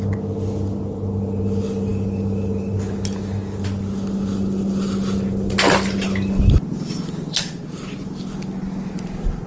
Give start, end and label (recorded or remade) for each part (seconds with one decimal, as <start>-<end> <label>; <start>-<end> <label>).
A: 0.0-9.5 recorded